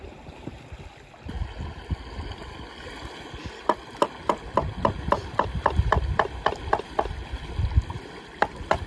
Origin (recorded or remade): recorded